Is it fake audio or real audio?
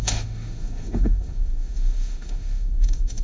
fake